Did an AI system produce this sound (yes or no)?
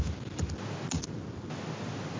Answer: no